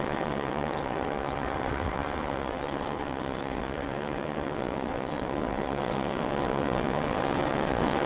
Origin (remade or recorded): remade